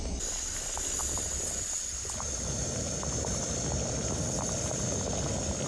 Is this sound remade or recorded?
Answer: recorded